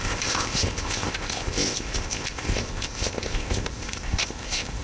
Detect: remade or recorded remade